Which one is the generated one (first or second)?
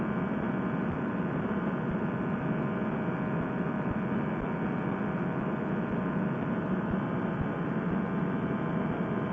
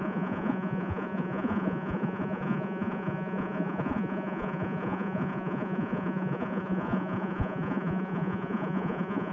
second